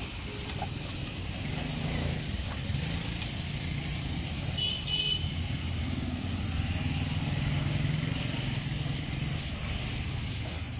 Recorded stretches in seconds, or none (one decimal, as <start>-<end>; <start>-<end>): 0.0-5.8; 6.3-10.8